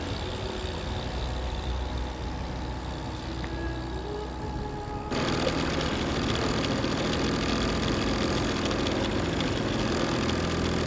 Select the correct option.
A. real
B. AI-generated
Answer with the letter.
A